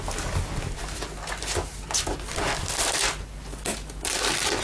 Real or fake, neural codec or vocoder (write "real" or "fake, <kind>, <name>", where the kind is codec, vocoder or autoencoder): real